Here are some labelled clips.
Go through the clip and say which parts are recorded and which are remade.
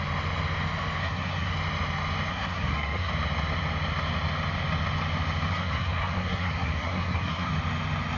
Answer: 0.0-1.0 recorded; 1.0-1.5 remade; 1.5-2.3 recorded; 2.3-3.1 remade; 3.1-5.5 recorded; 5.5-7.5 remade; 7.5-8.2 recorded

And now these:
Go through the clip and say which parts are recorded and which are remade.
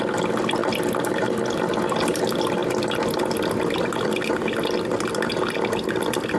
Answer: 0.0-6.4 recorded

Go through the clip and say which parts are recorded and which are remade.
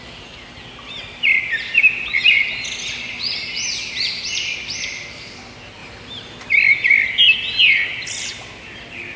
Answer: 0.0-9.2 recorded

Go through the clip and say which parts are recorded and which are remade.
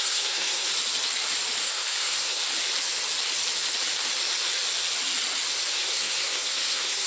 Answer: 0.0-0.7 remade; 0.7-1.6 recorded; 1.6-2.4 remade; 2.4-5.7 recorded; 5.7-7.1 remade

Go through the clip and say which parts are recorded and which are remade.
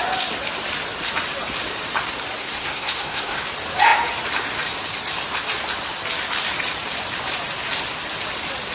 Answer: 0.0-2.4 recorded; 2.4-3.4 remade; 3.4-8.7 recorded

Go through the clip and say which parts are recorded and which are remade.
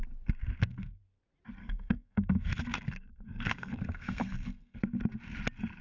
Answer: 0.0-0.4 recorded; 0.4-1.0 remade; 1.0-1.6 recorded; 1.6-4.8 remade; 4.8-5.8 recorded